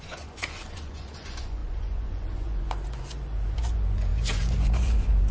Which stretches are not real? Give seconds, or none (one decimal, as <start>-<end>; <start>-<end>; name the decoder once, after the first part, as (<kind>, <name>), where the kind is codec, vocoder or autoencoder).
0.0-5.3 (vocoder, Vocos)